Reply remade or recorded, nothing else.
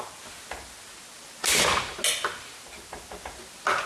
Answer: recorded